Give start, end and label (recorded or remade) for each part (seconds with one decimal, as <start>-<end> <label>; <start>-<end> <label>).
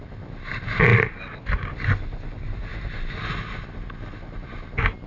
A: 0.0-5.1 recorded